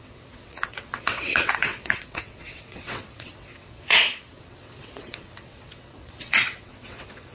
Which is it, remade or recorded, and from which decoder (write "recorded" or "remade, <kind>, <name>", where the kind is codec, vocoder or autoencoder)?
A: remade, vocoder, WaveNeXt